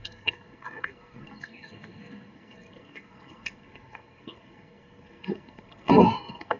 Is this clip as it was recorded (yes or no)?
no